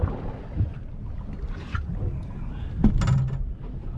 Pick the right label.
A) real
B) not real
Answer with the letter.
A